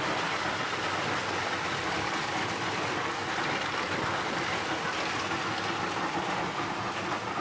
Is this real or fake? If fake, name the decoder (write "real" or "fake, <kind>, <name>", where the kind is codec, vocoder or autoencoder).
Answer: real